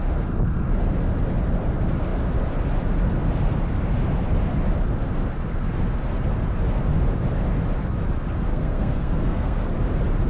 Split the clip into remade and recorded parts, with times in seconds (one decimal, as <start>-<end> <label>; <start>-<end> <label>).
0.0-8.5 recorded; 8.5-9.7 remade; 9.7-10.3 recorded